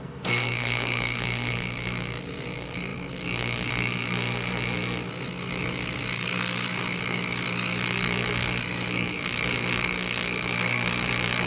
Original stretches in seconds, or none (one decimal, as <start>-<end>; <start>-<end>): none